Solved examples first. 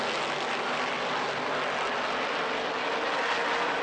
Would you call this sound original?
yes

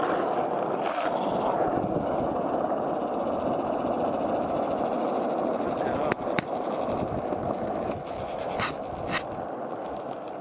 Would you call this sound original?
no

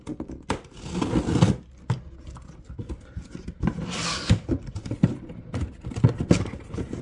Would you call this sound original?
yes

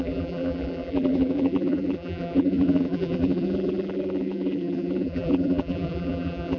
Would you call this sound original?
no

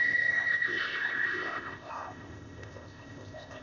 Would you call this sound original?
no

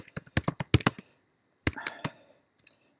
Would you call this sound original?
yes